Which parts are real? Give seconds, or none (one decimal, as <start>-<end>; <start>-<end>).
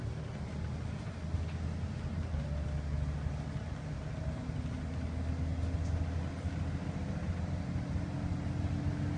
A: 0.0-9.2